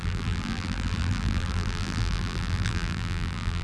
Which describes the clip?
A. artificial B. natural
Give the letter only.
A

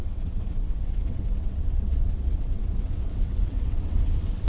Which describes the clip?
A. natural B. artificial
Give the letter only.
B